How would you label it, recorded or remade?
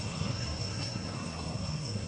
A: remade